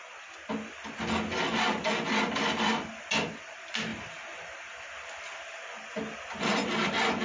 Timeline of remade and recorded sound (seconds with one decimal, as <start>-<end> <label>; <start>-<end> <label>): 0.0-7.2 recorded